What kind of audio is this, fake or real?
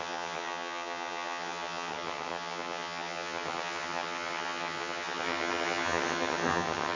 fake